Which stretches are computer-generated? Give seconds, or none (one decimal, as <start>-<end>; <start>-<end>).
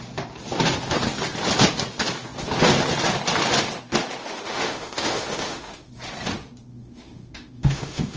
4.2-5.9; 6.7-8.2